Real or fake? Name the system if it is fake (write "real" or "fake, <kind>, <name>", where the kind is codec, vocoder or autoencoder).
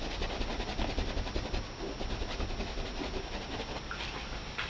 real